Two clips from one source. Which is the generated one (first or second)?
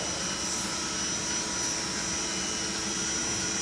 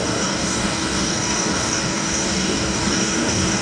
second